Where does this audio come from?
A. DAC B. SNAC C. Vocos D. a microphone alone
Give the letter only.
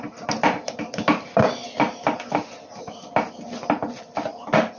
D